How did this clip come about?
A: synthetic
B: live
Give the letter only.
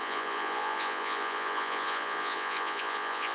A